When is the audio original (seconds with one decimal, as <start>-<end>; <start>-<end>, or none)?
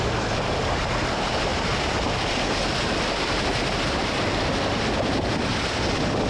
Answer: 0.0-6.3